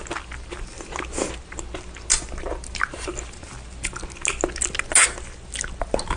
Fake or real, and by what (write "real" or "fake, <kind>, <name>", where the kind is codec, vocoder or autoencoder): real